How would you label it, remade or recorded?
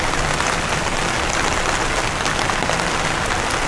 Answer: recorded